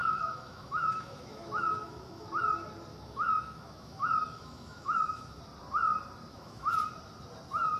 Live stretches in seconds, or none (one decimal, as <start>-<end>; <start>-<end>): 2.3-2.9; 5.4-6.3; 6.8-7.8